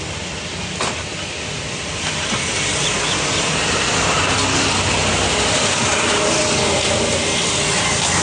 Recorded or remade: recorded